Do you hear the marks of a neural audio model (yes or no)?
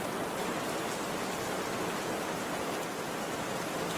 no